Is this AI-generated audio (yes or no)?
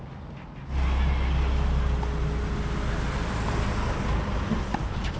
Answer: no